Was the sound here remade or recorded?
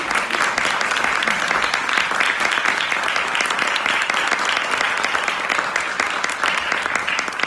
recorded